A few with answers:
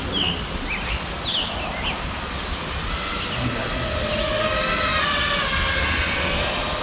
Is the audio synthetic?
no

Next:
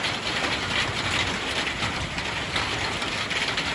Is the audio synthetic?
no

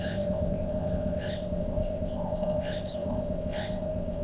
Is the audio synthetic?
yes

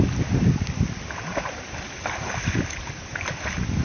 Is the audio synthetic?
no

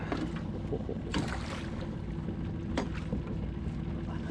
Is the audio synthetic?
no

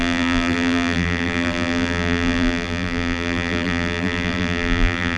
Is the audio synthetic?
yes